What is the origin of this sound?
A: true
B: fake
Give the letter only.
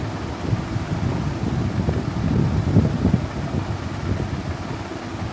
A